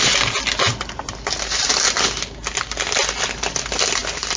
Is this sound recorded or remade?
recorded